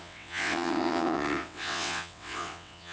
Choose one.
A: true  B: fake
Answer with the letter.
B